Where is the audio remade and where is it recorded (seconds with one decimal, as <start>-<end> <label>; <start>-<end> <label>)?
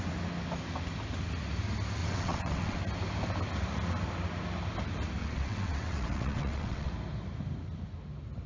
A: 0.0-2.0 recorded; 2.0-2.8 remade; 2.8-5.2 recorded; 5.2-6.9 remade; 6.9-8.5 recorded